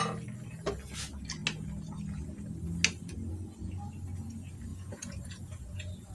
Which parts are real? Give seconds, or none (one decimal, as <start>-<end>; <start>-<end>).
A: 0.0-4.7